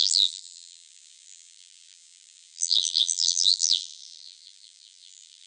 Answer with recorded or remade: remade